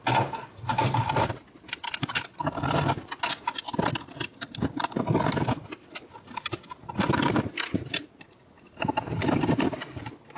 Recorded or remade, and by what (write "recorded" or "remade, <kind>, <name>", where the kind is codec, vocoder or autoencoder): recorded